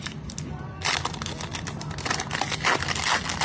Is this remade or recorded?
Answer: recorded